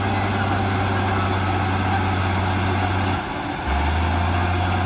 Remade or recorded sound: recorded